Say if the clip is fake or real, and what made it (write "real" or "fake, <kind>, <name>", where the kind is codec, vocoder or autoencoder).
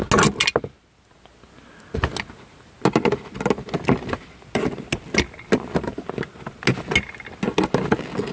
real